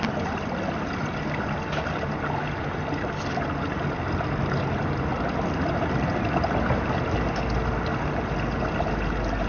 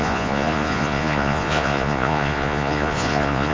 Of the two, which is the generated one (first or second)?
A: second